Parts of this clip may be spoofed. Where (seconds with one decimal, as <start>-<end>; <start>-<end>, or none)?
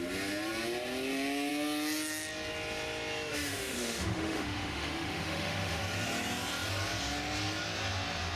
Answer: 3.3-5.8